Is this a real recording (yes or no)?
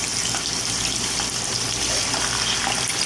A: no